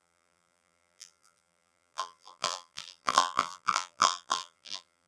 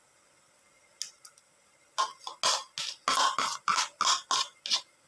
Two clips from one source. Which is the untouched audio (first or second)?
second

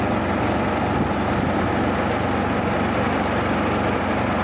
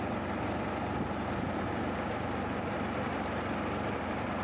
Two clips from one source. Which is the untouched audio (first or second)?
first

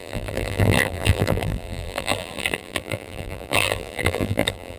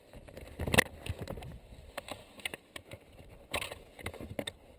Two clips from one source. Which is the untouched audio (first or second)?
second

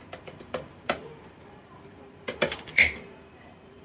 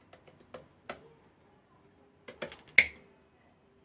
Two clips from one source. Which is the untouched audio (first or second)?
second